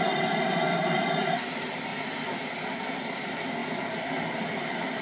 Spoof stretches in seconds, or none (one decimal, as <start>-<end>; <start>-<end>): 0.0-1.9; 3.0-5.0